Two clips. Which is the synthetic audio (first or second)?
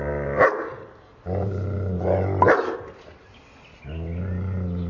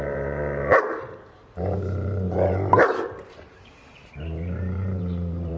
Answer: second